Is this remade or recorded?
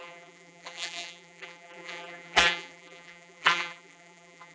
remade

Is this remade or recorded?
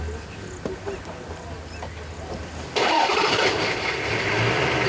recorded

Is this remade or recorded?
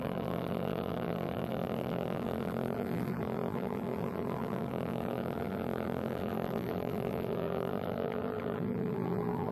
remade